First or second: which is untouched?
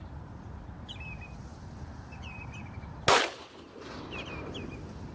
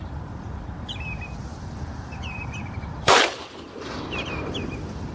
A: first